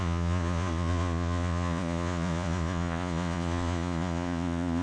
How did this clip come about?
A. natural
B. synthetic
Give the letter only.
B